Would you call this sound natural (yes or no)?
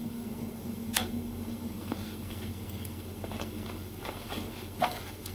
no